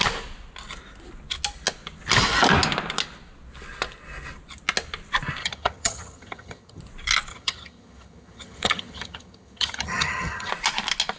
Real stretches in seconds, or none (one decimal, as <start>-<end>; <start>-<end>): 0.0-5.4; 6.8-7.3; 10.5-11.2